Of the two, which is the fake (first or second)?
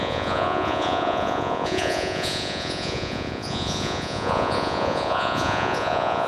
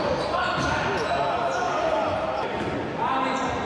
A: first